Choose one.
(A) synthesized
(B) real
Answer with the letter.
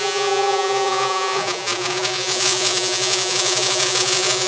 A